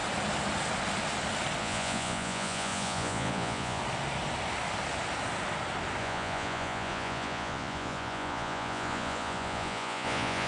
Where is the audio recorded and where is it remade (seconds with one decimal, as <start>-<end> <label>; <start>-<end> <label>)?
0.0-1.6 recorded; 1.6-3.8 remade; 3.8-6.0 recorded; 6.0-10.5 remade